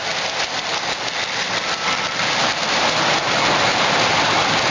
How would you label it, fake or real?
real